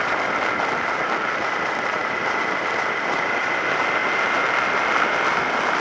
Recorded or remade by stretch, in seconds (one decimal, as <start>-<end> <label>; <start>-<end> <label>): 0.0-5.8 recorded